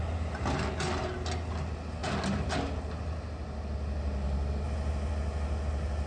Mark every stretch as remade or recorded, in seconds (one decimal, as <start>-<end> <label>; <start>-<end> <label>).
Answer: 0.0-6.1 recorded